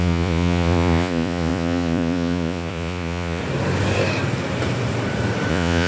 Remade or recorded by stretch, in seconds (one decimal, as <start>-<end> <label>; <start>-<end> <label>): 0.0-3.4 remade; 3.4-5.5 recorded; 5.5-5.9 remade